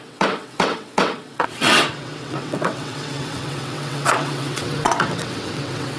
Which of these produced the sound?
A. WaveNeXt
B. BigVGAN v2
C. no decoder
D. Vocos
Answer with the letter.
A